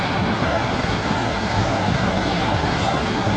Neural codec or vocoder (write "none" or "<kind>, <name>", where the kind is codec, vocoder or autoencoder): codec, SNAC